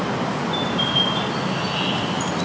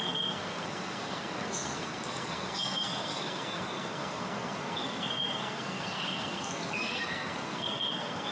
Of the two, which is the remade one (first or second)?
second